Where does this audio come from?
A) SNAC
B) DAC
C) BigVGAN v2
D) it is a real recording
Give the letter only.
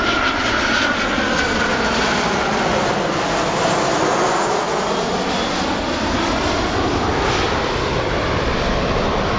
D